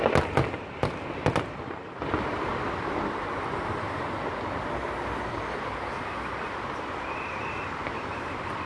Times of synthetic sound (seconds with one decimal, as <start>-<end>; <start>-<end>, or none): none